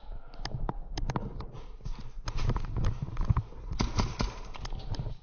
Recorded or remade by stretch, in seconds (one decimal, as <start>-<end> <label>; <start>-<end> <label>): 0.0-5.2 recorded